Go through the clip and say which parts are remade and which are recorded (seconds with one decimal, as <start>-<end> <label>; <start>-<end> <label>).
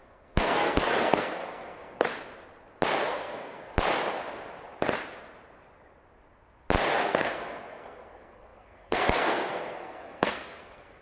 0.0-2.1 remade; 2.1-3.0 recorded; 3.0-3.7 remade; 3.7-6.9 recorded; 6.9-11.0 remade